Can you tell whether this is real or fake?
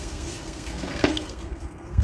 fake